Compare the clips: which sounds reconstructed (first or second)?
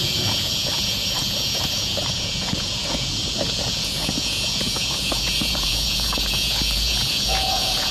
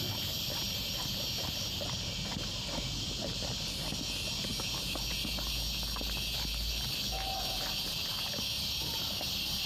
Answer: first